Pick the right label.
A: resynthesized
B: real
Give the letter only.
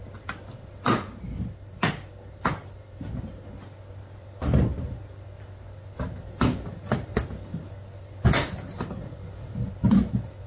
B